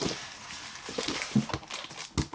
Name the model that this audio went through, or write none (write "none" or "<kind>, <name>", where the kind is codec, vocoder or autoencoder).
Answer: none